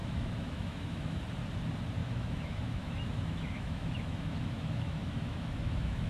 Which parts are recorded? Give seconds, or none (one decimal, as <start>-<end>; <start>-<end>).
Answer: 1.2-2.0